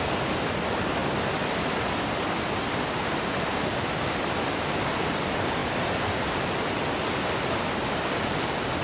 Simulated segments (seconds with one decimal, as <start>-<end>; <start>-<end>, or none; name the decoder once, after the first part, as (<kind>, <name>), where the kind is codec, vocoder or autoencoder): none